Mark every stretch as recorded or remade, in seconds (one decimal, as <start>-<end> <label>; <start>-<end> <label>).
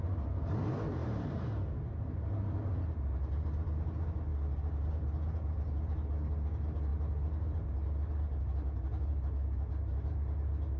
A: 0.0-1.0 recorded; 1.0-2.5 remade; 2.5-10.8 recorded